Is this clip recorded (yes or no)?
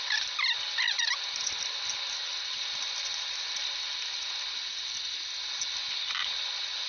yes